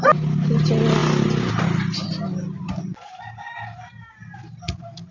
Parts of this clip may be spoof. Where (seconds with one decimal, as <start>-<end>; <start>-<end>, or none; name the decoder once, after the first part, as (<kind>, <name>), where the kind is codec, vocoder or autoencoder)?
none